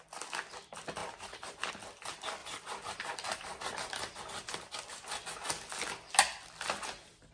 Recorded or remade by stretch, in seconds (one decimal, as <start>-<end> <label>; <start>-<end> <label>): 0.0-1.0 recorded; 1.0-1.7 remade; 1.7-2.4 recorded; 2.4-4.2 remade; 4.2-7.3 recorded